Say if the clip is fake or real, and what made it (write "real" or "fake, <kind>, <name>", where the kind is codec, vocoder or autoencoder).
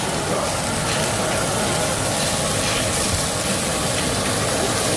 real